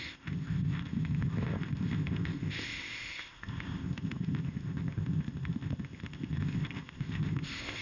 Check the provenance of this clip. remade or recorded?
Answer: remade